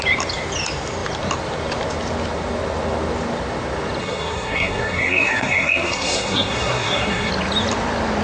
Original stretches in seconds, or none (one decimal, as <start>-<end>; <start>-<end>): 0.0-4.0; 7.3-8.2